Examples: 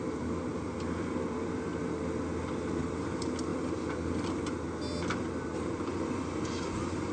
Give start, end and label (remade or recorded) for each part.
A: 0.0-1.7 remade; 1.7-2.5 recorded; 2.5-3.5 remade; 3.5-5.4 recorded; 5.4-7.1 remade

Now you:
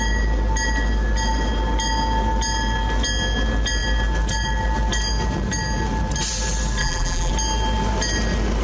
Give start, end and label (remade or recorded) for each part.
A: 0.0-6.8 recorded; 6.8-7.3 remade; 7.3-8.6 recorded

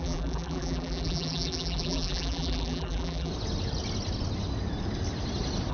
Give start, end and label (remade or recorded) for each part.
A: 0.0-3.3 remade; 3.3-5.7 recorded

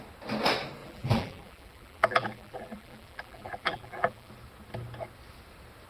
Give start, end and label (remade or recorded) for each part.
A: 0.0-0.8 recorded; 0.8-4.3 remade; 4.3-5.9 recorded

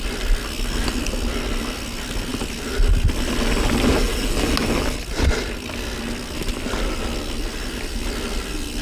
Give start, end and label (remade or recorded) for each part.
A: 0.0-8.8 recorded